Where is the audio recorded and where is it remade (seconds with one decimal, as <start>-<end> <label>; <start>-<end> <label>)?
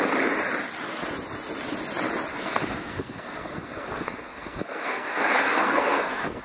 0.0-2.3 recorded; 2.3-6.4 remade